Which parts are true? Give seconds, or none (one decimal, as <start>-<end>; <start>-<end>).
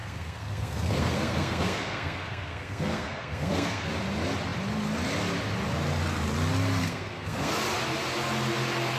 3.9-6.8; 7.5-9.0